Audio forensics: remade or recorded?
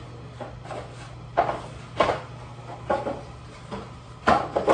recorded